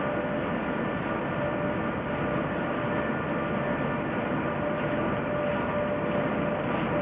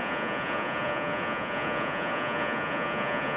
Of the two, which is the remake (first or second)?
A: second